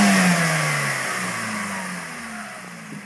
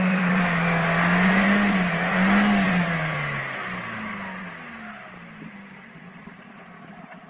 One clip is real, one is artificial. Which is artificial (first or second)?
second